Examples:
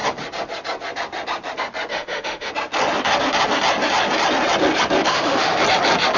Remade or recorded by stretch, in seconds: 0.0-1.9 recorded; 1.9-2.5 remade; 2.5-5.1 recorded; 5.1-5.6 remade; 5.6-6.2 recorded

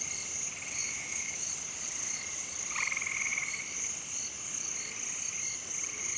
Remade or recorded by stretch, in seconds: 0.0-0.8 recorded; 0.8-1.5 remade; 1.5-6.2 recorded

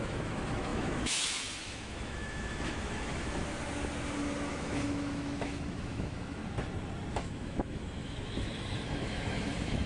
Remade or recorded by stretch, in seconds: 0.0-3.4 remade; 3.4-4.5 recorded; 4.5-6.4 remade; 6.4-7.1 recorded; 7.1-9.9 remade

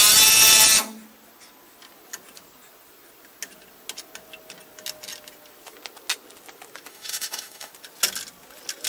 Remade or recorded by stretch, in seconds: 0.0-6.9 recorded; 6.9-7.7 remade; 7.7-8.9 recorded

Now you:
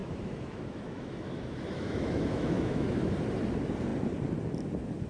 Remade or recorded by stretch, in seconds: 0.0-3.1 remade; 3.1-5.1 recorded

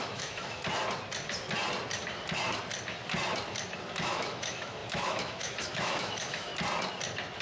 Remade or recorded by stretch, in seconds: 0.0-0.6 remade; 0.6-4.0 recorded; 4.0-6.5 remade; 6.5-7.4 recorded

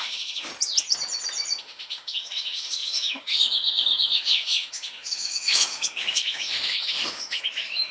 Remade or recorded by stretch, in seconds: 0.0-0.5 remade; 0.5-1.6 recorded; 1.6-7.9 remade

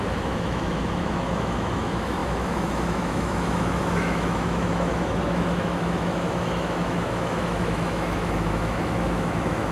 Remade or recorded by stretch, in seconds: 0.0-9.7 remade